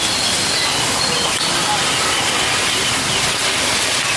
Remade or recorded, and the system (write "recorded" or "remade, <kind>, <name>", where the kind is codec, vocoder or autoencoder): recorded